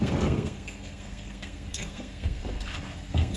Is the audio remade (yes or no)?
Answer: yes